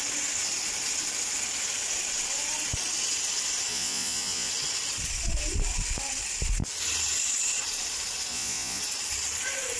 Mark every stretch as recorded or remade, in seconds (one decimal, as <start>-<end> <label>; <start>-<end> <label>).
0.0-3.7 recorded; 3.7-4.5 remade; 4.5-8.3 recorded; 8.3-8.8 remade; 8.8-9.8 recorded